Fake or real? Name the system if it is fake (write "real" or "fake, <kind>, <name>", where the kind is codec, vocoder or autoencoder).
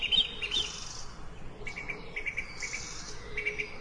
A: real